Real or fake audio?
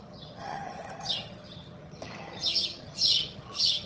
fake